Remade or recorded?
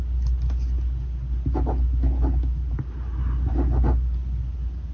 recorded